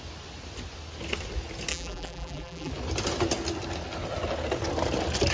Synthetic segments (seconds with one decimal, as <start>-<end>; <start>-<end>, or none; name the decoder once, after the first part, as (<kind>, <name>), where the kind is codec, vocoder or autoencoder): 1.7-2.7 (vocoder, BigVGAN v2)